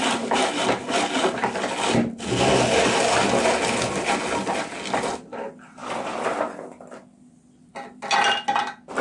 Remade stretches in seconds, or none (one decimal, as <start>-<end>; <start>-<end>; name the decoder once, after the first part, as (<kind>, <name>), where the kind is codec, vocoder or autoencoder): 5.8-6.5 (vocoder, BigVGAN v2)